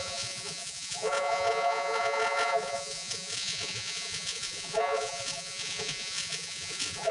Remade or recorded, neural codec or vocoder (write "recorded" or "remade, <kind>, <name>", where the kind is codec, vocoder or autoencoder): remade, vocoder, Vocos